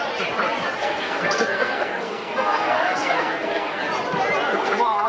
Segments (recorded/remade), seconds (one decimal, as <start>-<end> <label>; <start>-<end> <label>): 0.0-0.8 recorded; 0.8-3.8 remade; 3.8-4.5 recorded; 4.5-5.1 remade